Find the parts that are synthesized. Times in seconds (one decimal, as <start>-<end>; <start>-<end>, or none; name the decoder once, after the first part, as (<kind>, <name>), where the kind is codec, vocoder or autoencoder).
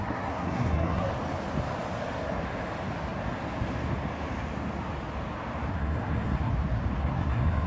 0.0-1.1 (codec, SNAC); 5.7-6.5; 7.0-7.7